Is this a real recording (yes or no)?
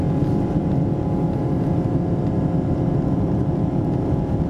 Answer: yes